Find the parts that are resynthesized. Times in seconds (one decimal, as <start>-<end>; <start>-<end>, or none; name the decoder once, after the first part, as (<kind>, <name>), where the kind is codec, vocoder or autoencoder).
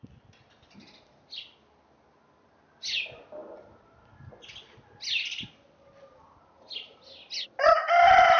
none